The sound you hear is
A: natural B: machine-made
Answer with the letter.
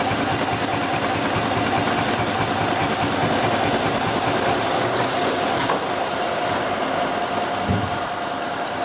A